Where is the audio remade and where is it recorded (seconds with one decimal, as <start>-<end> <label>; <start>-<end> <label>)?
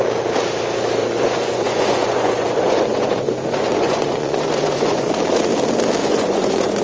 0.0-1.0 recorded; 1.0-5.1 remade; 5.1-6.0 recorded; 6.0-6.8 remade